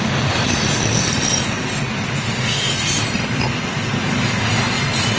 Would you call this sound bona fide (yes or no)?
yes